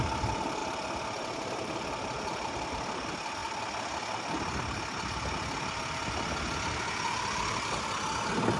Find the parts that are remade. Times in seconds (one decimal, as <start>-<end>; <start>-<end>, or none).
0.6-2.7